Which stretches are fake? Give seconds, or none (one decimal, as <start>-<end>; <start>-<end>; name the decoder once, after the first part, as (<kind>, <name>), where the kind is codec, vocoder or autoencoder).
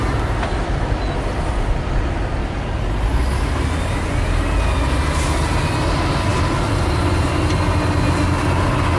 none